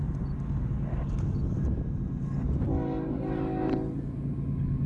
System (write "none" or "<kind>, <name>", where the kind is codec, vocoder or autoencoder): none